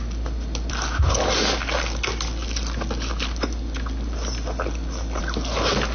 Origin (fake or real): real